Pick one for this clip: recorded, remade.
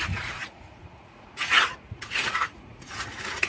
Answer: remade